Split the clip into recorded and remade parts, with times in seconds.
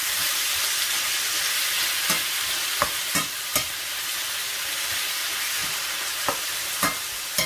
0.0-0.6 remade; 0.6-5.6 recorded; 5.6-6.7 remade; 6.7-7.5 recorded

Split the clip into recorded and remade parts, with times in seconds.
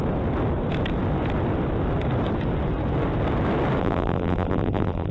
0.0-3.8 recorded; 3.8-5.1 remade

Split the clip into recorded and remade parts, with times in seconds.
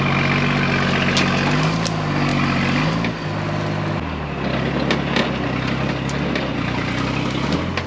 0.0-7.9 recorded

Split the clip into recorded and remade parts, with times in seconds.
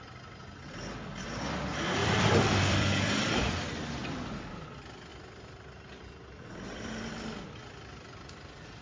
0.0-2.0 recorded; 2.0-3.5 remade; 3.5-4.0 recorded; 4.0-4.5 remade; 4.5-5.1 recorded; 5.1-8.8 remade